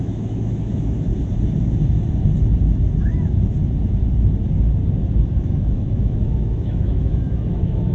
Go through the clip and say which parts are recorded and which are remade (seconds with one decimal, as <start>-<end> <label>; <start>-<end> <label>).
0.0-1.1 remade; 1.1-5.4 recorded; 5.4-7.9 remade